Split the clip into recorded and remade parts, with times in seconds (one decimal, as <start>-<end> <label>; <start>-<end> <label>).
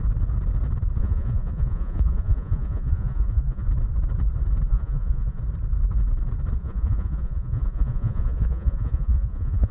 0.0-1.0 recorded; 1.0-3.7 remade; 3.7-4.7 recorded; 4.7-5.4 remade; 5.4-6.6 recorded; 6.6-9.7 remade